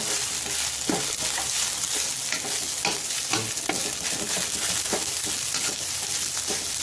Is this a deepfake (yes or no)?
no